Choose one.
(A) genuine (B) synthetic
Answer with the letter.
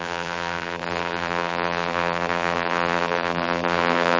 B